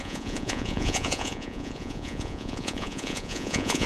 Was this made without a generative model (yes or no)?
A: no